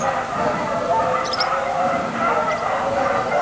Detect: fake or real real